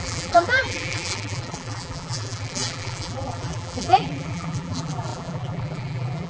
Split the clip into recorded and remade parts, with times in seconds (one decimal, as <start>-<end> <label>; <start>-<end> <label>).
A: 0.0-6.3 remade